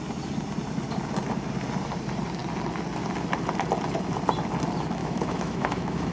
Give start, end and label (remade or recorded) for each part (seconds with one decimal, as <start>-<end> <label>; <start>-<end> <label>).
0.0-5.0 recorded; 5.0-6.1 remade